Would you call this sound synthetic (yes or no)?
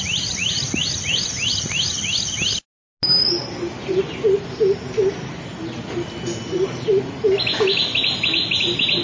no